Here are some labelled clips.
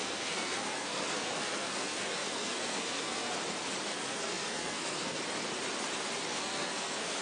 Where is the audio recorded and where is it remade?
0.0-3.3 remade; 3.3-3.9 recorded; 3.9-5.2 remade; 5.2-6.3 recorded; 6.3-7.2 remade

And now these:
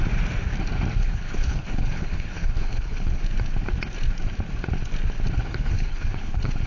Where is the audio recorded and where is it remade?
0.0-1.0 recorded; 1.0-3.2 remade; 3.2-5.5 recorded; 5.5-6.7 remade

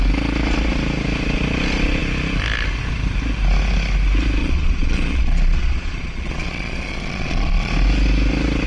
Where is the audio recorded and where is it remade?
0.0-4.4 recorded; 4.4-7.7 remade; 7.7-8.7 recorded

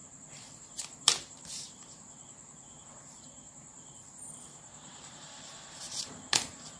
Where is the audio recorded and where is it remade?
0.0-6.8 remade

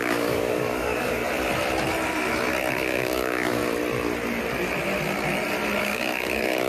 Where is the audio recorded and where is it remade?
0.0-1.2 remade; 1.2-2.7 recorded; 2.7-3.6 remade; 3.6-5.8 recorded; 5.8-6.7 remade

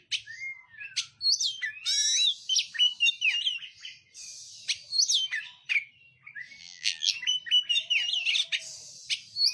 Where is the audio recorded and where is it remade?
0.0-6.6 recorded; 6.6-7.1 remade; 7.1-9.5 recorded